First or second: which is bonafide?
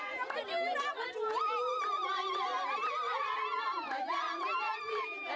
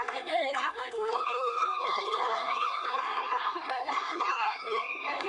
first